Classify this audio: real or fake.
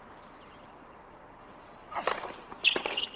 fake